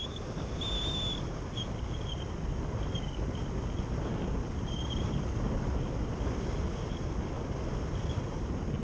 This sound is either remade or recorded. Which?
recorded